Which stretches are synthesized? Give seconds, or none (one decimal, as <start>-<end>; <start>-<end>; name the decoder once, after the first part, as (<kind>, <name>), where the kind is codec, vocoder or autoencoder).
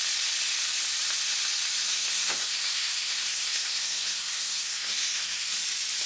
1.9-5.5 (codec, SNAC)